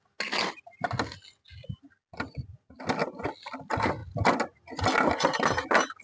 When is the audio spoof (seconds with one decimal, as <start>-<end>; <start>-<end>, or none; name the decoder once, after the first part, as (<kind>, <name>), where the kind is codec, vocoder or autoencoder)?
none